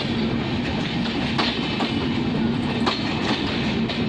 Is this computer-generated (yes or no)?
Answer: no